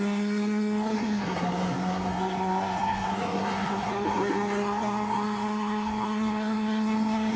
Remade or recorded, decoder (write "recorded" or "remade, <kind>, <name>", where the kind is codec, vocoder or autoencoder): remade, codec, SNAC